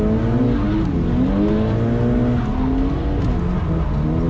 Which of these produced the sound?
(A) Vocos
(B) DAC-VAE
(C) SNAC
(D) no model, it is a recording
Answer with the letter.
D